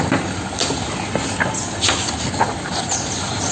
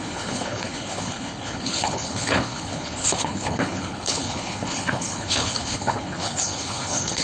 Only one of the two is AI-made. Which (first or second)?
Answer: second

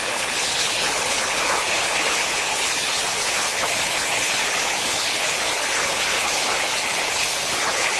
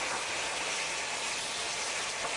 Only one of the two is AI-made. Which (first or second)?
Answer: first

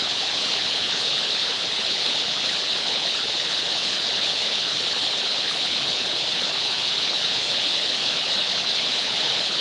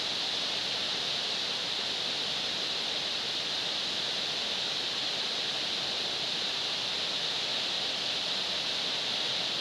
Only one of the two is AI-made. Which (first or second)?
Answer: first